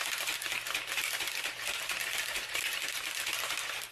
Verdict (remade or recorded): recorded